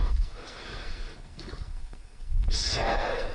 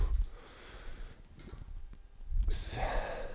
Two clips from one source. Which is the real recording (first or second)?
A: second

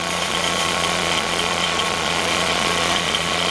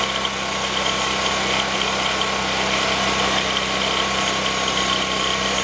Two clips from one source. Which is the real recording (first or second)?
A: second